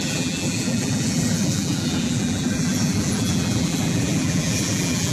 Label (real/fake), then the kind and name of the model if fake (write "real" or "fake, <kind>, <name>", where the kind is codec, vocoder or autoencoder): fake, vocoder, BigVGAN v2